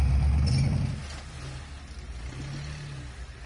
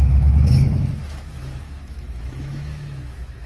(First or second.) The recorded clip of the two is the first